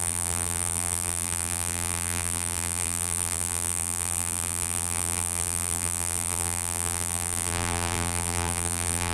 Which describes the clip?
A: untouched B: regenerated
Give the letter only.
B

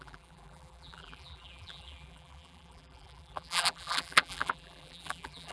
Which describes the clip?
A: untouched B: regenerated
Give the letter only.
B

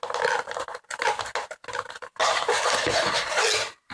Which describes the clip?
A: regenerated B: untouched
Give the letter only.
B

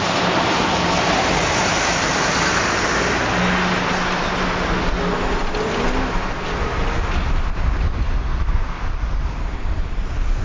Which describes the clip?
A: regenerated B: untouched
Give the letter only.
B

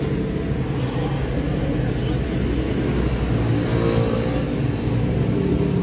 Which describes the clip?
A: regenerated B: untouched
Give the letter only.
B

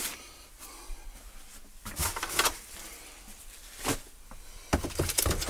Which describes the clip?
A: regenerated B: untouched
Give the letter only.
B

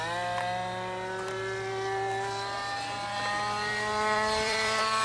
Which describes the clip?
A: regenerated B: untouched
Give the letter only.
A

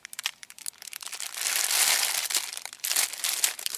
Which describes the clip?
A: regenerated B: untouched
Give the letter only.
B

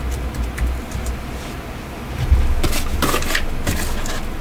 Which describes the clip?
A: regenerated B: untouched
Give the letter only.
B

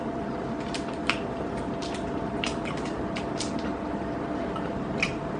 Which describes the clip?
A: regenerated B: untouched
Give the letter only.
A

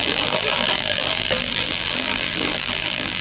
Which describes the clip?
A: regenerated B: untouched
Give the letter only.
A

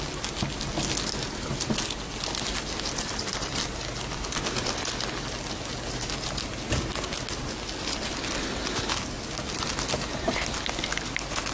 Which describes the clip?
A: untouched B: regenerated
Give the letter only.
A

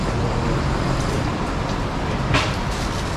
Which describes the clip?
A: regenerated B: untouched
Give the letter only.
A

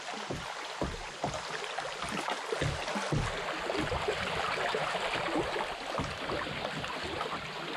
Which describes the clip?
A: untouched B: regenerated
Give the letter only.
A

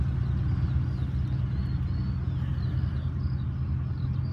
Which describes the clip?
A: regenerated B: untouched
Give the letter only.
B